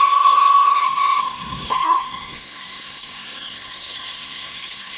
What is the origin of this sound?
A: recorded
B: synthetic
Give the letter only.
B